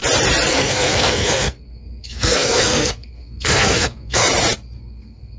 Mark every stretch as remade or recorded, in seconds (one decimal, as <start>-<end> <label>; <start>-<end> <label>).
0.0-0.5 recorded; 0.5-4.2 remade; 4.2-4.8 recorded; 4.8-5.4 remade